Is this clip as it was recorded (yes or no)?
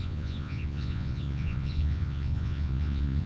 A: no